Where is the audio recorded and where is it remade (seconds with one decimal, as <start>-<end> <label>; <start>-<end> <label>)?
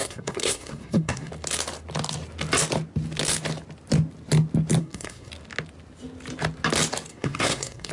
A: 0.0-1.3 remade; 1.3-4.8 recorded; 4.8-5.3 remade; 5.3-7.1 recorded; 7.1-7.9 remade